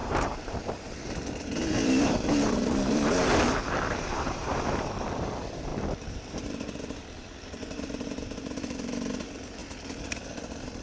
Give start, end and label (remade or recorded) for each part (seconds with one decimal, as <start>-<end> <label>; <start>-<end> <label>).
0.0-3.3 remade; 3.3-3.9 recorded; 3.9-9.6 remade; 9.6-10.4 recorded; 10.4-10.8 remade